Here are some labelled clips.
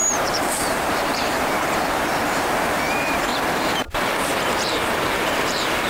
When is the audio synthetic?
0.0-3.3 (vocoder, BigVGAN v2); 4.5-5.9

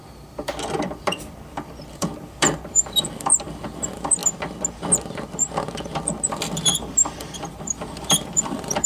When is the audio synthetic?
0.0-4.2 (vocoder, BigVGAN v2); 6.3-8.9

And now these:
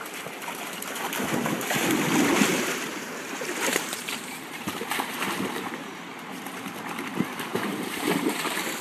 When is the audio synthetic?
2.5-6.4 (vocoder, BigVGAN v2); 7.5-8.4